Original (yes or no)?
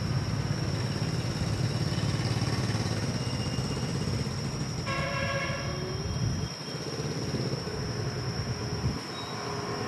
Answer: yes